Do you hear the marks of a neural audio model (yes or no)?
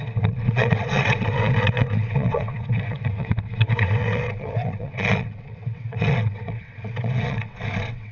yes